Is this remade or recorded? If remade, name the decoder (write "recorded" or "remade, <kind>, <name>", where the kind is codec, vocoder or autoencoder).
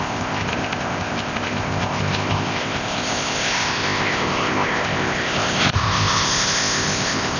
remade, codec, ZipCodec